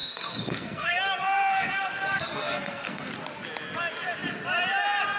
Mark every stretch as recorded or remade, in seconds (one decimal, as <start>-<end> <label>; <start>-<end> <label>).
0.0-3.1 remade; 3.1-5.2 recorded